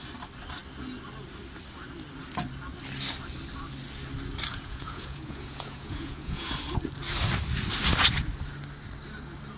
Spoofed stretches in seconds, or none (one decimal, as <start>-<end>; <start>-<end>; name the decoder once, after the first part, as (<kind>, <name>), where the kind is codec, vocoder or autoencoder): 4.5-6.5 (vocoder, Vocos)

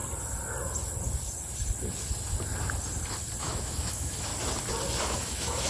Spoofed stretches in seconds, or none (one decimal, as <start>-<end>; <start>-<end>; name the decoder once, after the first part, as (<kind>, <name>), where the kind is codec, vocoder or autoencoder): 3.4-4.3 (autoencoder, DAC-VAE); 5.0-5.7

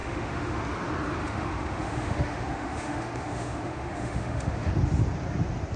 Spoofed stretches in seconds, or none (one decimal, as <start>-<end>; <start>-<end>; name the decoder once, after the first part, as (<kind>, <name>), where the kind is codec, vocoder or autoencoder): 0.0-0.6 (autoencoder, DAC-VAE); 1.2-4.7

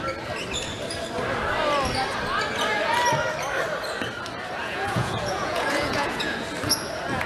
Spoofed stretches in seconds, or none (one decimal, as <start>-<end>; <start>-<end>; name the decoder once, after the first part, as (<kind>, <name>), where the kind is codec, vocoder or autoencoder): 4.6-6.5 (vocoder, Vocos)

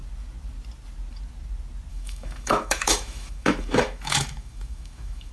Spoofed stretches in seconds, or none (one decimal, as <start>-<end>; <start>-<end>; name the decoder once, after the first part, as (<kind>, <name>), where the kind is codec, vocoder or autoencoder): 1.9-5.3 (autoencoder, DAC-VAE)

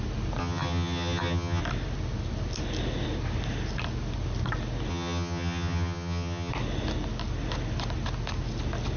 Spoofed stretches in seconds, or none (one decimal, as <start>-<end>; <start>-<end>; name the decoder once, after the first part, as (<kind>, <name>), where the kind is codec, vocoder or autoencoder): 0.4-1.6 (vocoder, HiFi-GAN); 4.9-6.5